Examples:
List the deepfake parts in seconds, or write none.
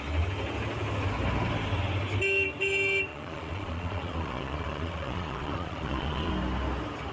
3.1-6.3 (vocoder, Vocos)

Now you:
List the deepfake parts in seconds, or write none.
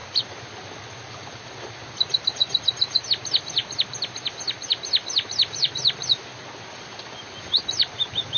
none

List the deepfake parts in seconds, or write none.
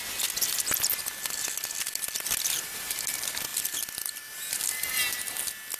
none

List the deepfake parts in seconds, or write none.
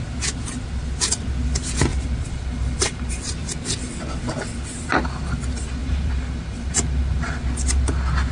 1.9-3.2 (vocoder, BigVGAN v2); 5.8-7.4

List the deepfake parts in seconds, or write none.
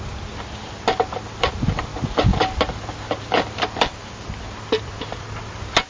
none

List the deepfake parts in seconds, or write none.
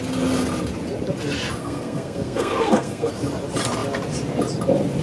1.6-3.1 (codec, SNAC)